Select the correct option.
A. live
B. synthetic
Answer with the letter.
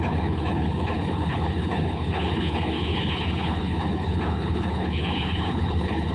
B